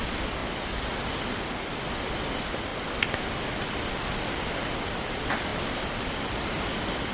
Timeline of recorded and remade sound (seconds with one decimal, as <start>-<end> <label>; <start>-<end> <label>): 0.0-7.1 recorded